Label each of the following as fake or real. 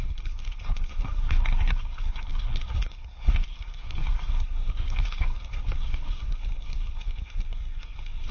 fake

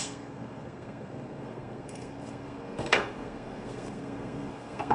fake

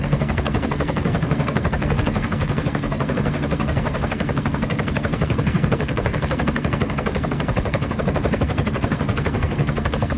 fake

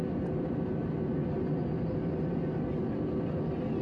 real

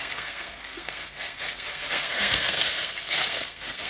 fake